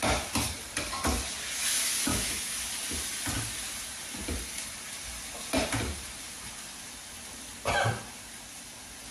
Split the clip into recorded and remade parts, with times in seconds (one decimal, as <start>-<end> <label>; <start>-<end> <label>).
0.0-2.1 recorded; 2.1-2.7 remade; 2.7-9.1 recorded